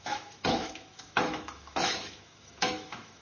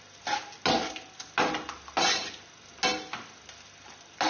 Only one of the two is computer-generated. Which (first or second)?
first